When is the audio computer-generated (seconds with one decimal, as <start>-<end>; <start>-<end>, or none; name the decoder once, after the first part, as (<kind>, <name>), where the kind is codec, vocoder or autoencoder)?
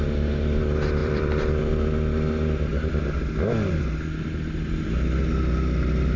1.0-1.6 (vocoder, BigVGAN v2)